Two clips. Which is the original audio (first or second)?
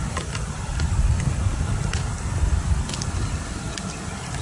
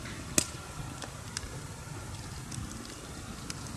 second